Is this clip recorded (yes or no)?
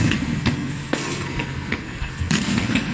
no